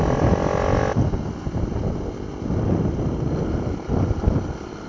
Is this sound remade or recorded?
recorded